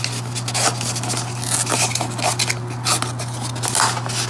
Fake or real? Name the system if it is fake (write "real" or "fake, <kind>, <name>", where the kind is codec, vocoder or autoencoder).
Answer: real